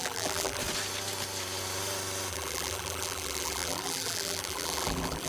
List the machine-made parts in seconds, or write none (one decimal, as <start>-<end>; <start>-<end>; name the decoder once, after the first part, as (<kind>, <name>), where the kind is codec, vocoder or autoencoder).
0.0-0.6 (vocoder, BigVGAN v2); 2.3-5.3